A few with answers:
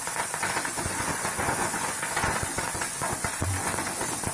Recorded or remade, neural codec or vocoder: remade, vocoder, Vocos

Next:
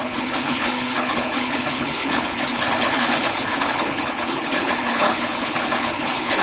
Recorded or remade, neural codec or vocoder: remade, codec, HILCodec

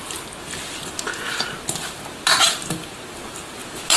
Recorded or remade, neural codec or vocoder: recorded